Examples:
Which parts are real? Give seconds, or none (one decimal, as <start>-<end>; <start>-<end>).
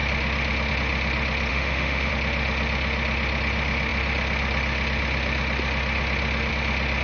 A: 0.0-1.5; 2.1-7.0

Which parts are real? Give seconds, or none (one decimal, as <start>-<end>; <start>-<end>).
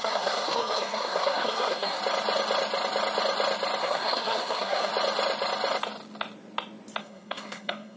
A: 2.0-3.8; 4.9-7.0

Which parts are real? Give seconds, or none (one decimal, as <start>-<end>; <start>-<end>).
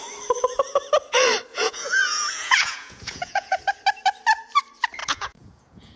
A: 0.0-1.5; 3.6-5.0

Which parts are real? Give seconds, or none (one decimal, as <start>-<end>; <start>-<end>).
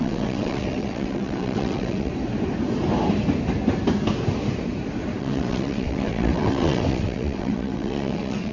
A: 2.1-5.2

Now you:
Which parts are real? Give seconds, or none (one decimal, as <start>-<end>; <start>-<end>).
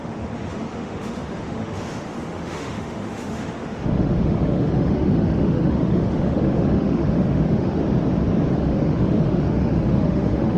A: 7.8-8.5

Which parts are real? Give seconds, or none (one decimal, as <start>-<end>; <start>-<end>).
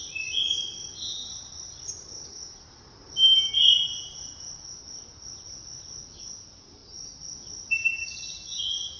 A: 0.0-9.0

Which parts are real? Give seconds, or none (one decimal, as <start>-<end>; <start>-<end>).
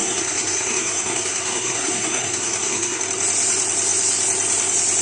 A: 3.0-5.0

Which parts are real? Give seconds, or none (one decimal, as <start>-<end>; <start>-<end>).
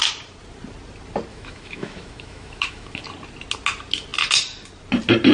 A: 0.0-1.3; 3.0-5.3